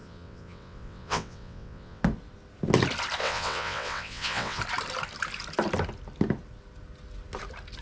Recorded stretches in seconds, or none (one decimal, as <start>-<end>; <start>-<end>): 2.0-3.2; 4.6-7.8